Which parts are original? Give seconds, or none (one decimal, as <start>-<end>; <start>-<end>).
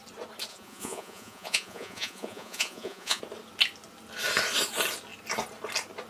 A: 0.0-0.5; 3.2-6.1